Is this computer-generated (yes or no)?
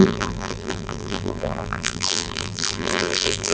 yes